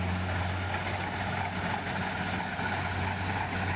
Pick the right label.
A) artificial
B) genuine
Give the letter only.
B